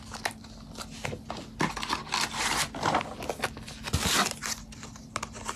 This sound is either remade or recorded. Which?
recorded